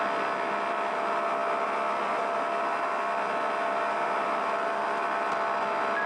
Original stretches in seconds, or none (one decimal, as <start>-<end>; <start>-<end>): 0.0-6.1